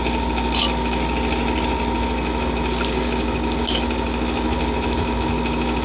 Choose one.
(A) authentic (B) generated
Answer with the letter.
A